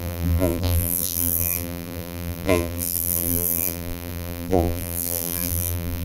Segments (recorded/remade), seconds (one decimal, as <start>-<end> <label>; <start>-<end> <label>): 0.0-6.0 remade